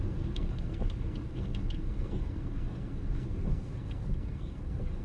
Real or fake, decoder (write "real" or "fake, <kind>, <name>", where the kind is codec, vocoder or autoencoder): fake, codec, SNAC